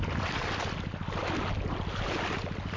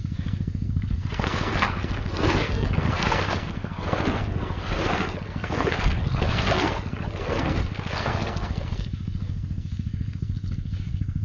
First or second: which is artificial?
second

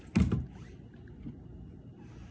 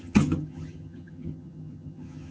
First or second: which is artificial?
second